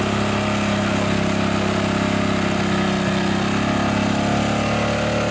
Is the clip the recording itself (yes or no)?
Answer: yes